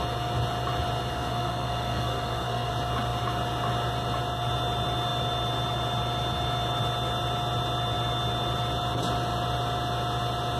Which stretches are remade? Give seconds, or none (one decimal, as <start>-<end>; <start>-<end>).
1.1-2.7